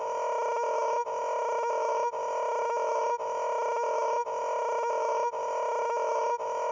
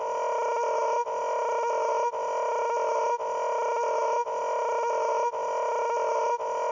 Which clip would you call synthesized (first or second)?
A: first